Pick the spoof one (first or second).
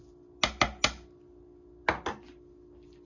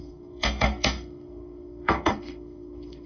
second